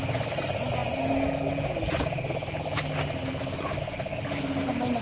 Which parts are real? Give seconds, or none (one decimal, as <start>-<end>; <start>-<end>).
0.0-5.0